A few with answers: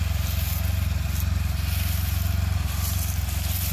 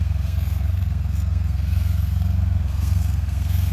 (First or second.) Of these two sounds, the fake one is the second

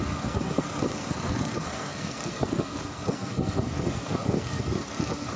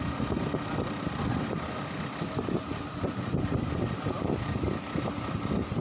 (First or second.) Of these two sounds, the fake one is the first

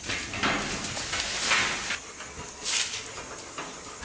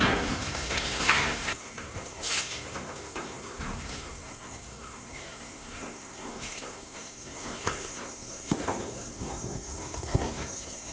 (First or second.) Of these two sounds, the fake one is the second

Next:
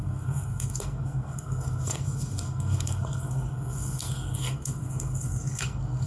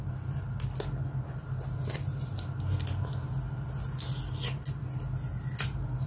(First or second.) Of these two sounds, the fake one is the first